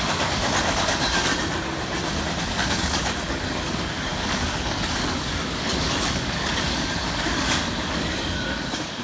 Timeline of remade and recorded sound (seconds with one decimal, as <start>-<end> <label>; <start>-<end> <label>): 0.0-1.3 remade; 1.3-2.4 recorded; 2.4-9.0 remade